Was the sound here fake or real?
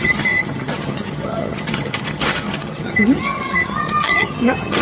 fake